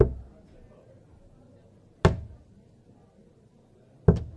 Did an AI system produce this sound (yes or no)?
no